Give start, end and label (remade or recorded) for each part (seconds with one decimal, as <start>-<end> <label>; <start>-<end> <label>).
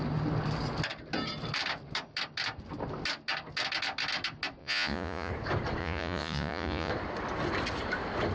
0.0-4.6 recorded; 4.6-5.3 remade; 5.3-5.8 recorded; 5.8-6.9 remade; 6.9-8.3 recorded